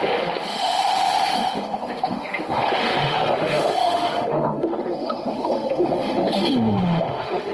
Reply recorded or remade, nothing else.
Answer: remade